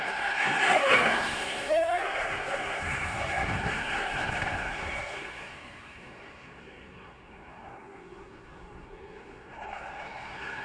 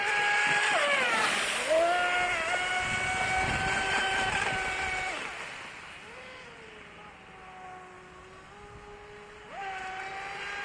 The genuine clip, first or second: second